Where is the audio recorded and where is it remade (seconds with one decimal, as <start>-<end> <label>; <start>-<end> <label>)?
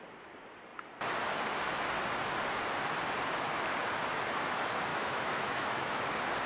0.0-4.9 recorded; 4.9-6.1 remade; 6.1-6.5 recorded